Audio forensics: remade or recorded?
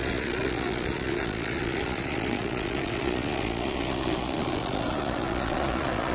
remade